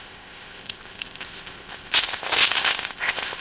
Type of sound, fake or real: fake